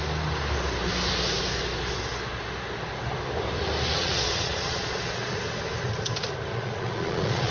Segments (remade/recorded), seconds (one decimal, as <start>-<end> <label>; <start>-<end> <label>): 0.0-4.0 recorded; 4.0-5.4 remade; 5.4-6.5 recorded; 6.5-7.5 remade